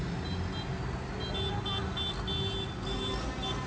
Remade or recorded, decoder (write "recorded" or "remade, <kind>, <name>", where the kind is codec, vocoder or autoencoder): recorded